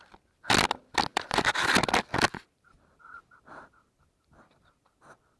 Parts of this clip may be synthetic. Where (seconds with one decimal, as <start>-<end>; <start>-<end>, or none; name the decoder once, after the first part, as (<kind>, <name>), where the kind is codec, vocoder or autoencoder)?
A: 1.1-1.6 (vocoder, BigVGAN v2)